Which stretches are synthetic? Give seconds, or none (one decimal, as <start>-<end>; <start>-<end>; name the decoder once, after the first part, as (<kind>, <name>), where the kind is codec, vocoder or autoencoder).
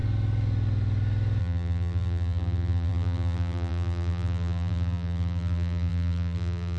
1.4-6.8 (vocoder, BigVGAN v2)